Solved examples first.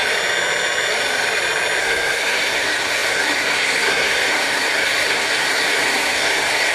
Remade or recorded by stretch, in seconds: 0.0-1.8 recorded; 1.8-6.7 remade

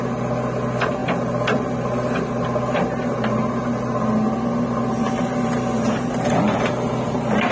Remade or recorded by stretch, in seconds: 0.0-7.5 recorded

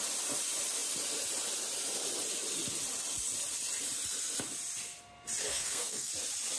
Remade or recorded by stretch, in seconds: 0.0-5.5 recorded; 5.5-6.1 remade; 6.1-6.6 recorded

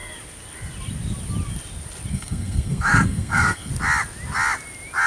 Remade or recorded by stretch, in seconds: 0.0-2.1 recorded; 2.1-3.7 remade; 3.7-5.1 recorded